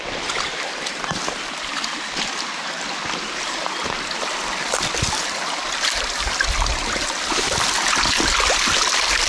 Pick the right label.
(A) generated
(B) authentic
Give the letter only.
B